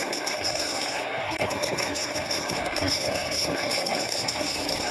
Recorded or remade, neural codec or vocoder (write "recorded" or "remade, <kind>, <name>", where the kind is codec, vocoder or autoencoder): remade, codec, SNAC